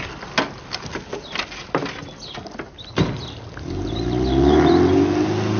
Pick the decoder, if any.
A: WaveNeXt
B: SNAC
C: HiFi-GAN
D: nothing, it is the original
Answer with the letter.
D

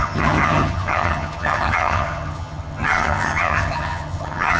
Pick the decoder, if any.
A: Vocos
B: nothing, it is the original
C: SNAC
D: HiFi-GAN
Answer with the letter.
D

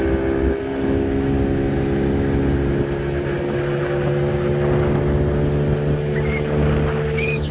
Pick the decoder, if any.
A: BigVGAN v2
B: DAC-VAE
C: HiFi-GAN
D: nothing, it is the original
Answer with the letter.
D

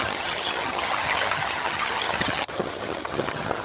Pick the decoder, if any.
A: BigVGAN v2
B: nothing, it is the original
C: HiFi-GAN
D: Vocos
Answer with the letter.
C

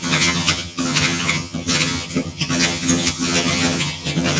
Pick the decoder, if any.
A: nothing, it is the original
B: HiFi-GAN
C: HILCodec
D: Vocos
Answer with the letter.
B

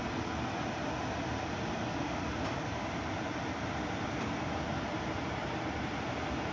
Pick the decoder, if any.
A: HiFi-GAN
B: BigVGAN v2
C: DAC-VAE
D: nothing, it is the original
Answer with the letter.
D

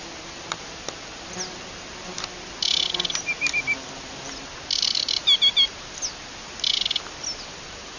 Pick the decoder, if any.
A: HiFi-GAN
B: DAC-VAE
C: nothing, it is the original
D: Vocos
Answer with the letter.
C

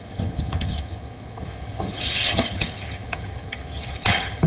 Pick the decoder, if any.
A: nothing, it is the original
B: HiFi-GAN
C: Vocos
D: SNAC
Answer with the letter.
B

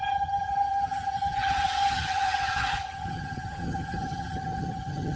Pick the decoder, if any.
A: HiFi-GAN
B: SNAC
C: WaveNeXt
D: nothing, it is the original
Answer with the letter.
A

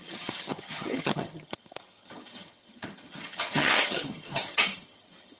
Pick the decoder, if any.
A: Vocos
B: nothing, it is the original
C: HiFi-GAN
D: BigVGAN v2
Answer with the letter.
C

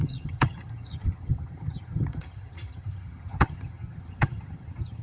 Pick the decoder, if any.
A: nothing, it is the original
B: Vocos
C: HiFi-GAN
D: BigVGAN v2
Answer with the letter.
C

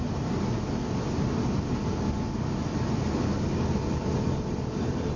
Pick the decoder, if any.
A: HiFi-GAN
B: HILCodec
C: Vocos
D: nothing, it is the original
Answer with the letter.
D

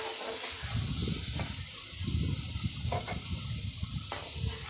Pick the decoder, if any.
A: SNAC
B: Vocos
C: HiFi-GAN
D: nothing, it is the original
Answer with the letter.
D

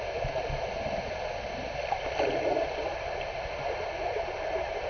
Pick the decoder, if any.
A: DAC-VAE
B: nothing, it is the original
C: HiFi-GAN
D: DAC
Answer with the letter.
B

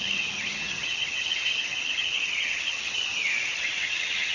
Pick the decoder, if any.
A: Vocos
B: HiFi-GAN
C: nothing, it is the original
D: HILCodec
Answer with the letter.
B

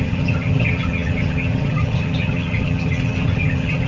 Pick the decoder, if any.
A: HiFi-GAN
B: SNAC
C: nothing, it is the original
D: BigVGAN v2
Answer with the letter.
A